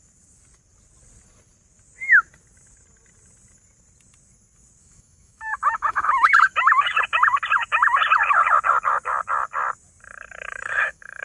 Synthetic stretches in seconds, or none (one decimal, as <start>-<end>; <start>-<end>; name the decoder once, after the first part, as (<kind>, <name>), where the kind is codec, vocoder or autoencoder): 4.8-7.0 (autoencoder, DAC-VAE); 10.5-11.2

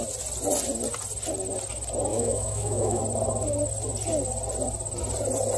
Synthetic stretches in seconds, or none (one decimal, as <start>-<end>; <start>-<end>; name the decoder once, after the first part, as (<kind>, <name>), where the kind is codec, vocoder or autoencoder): 2.1-3.0 (autoencoder, DAC-VAE)

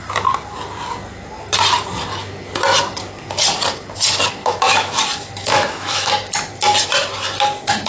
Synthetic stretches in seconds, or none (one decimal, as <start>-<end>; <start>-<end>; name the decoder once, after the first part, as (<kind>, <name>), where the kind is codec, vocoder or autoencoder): 4.4-5.0 (autoencoder, DAC-VAE); 5.4-6.1

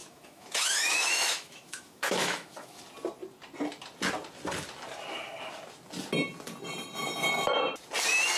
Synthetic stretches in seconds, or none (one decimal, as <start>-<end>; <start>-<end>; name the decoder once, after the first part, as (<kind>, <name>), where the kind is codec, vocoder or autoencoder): 0.0-2.8 (autoencoder, DAC-VAE)

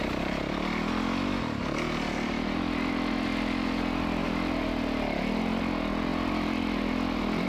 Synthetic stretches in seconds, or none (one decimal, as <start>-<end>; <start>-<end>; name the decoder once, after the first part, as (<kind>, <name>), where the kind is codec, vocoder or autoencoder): none

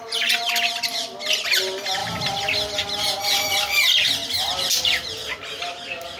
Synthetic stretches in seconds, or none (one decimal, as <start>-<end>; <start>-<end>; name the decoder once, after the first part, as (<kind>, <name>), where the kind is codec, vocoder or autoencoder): none